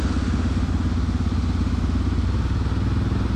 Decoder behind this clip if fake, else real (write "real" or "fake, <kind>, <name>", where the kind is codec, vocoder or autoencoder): real